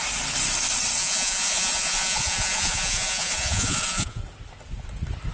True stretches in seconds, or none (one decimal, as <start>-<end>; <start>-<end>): 0.0-1.0; 4.2-5.3